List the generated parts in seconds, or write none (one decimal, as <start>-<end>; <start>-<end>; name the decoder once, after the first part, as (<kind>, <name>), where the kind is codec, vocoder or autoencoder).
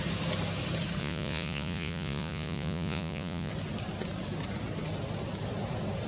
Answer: 1.0-3.5 (vocoder, Vocos)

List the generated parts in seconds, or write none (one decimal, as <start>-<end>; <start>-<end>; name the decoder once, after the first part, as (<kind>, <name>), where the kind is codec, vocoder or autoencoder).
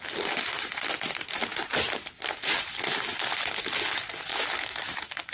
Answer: 4.3-5.3 (autoencoder, DAC-VAE)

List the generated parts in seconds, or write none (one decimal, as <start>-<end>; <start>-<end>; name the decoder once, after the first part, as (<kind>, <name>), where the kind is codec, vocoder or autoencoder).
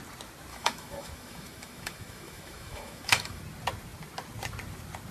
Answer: 0.5-3.4 (autoencoder, DAC-VAE)